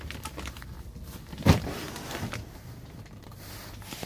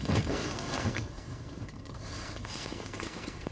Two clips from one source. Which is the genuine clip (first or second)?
first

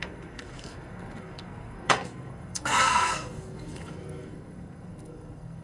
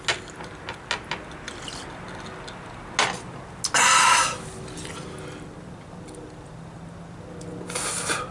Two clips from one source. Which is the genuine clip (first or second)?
second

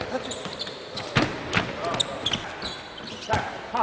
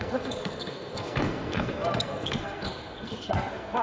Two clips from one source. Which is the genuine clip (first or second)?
first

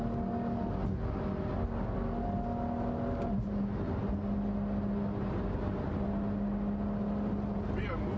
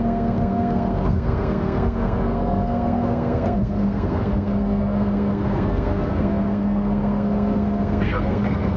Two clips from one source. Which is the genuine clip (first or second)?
first